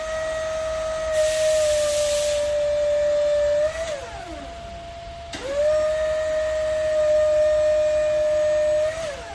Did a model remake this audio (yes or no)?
no